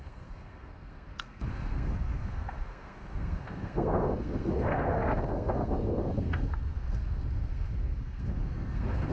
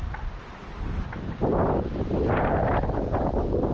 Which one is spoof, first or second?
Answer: first